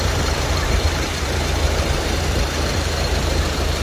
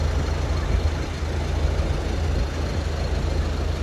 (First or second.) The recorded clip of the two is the second